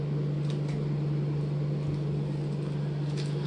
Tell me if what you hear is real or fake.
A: real